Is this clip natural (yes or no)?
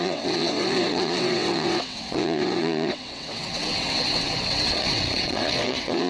no